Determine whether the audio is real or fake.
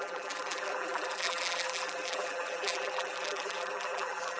fake